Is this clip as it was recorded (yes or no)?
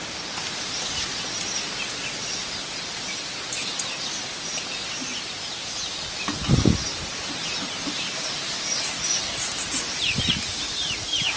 yes